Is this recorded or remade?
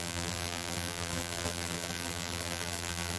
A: remade